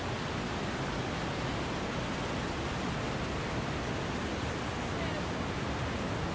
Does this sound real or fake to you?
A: real